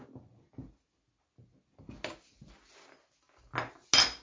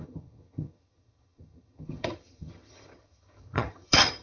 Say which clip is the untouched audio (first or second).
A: first